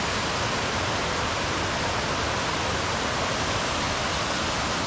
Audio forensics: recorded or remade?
recorded